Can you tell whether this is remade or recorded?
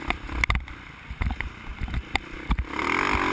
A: recorded